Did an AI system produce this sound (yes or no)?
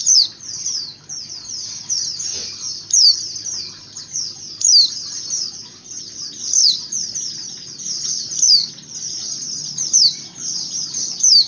yes